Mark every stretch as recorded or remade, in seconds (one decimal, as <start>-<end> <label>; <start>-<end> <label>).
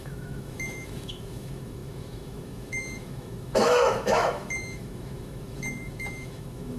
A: 0.0-6.8 remade